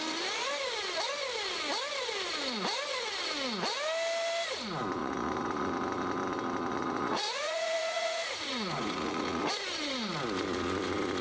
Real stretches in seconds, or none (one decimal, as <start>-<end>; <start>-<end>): 0.0-5.0; 5.7-6.7; 9.4-11.2